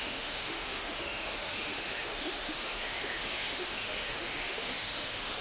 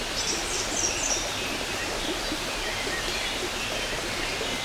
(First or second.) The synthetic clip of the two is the first